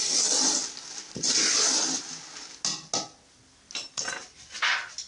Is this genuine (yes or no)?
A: yes